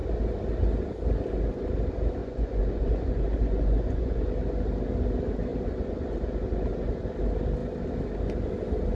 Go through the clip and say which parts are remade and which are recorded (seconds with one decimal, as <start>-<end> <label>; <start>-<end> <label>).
0.0-2.2 recorded; 2.2-4.2 remade; 4.2-8.9 recorded